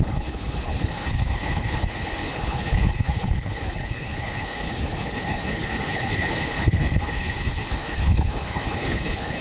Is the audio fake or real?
fake